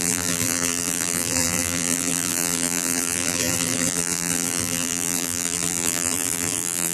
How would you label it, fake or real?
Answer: fake